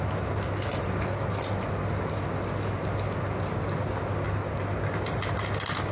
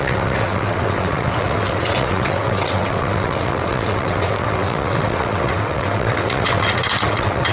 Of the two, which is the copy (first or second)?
second